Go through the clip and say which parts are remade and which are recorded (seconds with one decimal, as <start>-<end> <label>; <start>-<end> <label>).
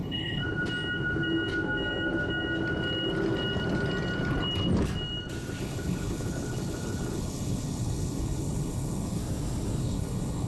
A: 0.0-0.4 remade; 0.4-5.6 recorded; 5.6-9.2 remade; 9.2-9.8 recorded; 9.8-10.5 remade